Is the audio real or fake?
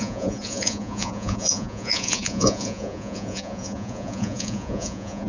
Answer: fake